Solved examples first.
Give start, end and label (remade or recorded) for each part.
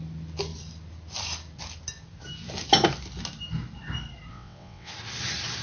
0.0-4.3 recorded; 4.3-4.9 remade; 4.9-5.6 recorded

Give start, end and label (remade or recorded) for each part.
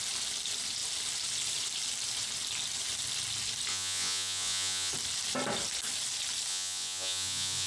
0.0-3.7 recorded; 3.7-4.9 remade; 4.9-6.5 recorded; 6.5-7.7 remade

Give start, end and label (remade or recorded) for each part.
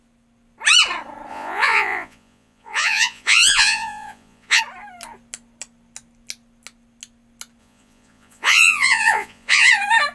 0.0-1.3 recorded; 1.3-4.6 remade; 4.6-7.6 recorded; 7.6-9.7 remade; 9.7-10.1 recorded